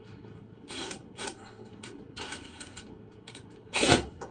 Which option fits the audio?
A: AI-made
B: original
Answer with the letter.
A